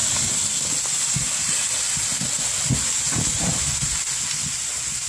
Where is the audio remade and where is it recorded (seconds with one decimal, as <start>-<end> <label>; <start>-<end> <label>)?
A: 0.0-5.1 recorded